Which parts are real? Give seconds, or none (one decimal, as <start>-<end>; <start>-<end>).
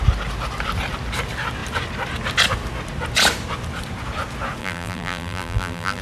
0.0-4.6